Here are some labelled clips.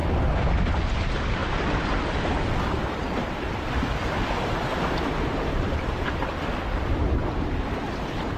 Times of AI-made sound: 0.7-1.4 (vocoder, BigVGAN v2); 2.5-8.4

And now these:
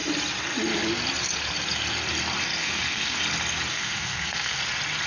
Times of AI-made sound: 2.6-3.2 (codec, SNAC); 3.7-4.6

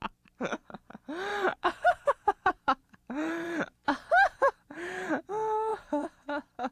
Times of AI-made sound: 1.3-5.3 (vocoder, BigVGAN v2); 5.7-6.7

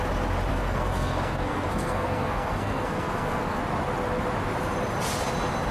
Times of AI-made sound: 0.5-3.6 (codec, SNAC)

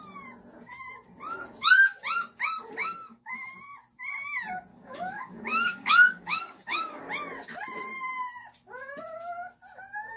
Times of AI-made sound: 2.8-3.5 (codec, DAC); 4.7-7.0

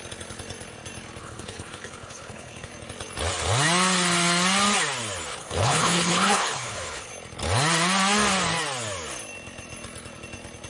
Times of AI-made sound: 1.2-2.7 (codec, HILCodec); 5.3-7.1